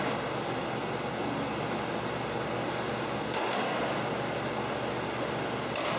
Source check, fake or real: real